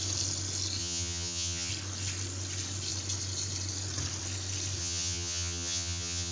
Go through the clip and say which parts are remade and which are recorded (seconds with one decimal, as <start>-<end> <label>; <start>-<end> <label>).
0.0-0.8 recorded; 0.8-1.7 remade; 1.7-4.8 recorded; 4.8-6.3 remade